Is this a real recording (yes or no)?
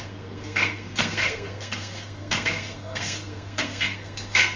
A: no